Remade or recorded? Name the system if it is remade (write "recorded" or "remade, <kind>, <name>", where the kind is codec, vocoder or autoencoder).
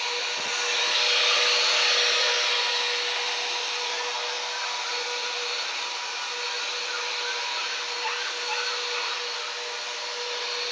recorded